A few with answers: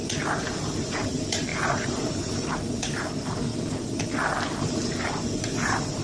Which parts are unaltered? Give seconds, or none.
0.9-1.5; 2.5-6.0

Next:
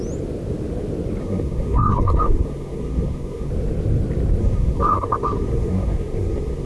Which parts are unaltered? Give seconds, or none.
0.0-1.2; 3.5-4.4

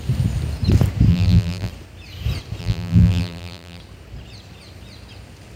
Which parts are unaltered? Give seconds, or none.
0.0-1.1; 1.7-2.6; 3.8-5.6